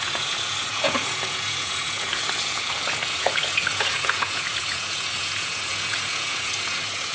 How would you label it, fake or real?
fake